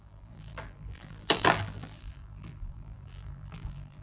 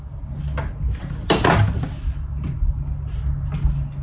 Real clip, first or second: second